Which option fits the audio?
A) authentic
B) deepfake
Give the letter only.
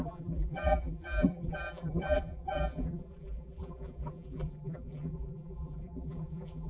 B